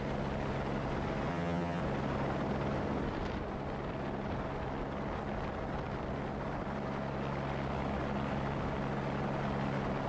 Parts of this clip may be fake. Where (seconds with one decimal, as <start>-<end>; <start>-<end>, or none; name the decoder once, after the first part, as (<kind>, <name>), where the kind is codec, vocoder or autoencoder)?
1.3-1.8 (vocoder, HiFi-GAN)